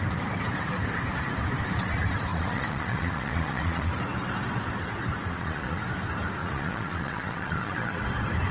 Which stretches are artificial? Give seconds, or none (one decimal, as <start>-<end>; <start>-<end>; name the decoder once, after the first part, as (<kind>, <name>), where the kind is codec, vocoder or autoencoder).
2.3-3.9 (vocoder, Vocos); 5.3-5.8; 6.4-8.0